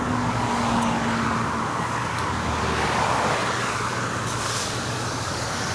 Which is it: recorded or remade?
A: remade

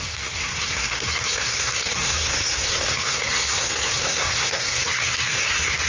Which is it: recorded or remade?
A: remade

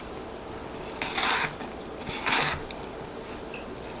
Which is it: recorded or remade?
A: recorded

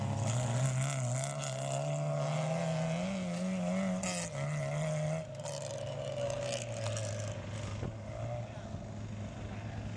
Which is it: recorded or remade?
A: recorded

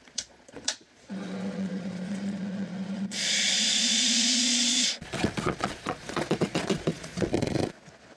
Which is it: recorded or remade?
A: remade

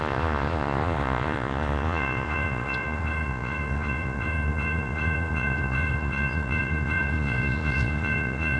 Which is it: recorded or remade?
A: remade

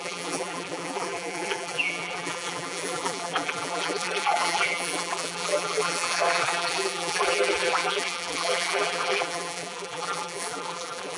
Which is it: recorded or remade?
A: remade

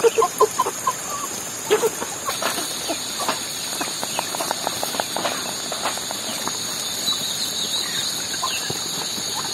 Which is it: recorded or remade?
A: remade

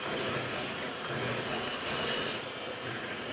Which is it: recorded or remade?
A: remade